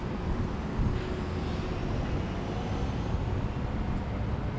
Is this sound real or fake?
real